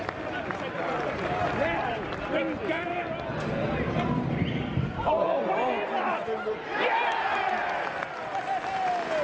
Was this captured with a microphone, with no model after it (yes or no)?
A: yes